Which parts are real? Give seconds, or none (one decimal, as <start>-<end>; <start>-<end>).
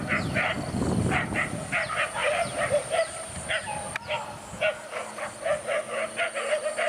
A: 0.0-2.2; 4.2-6.9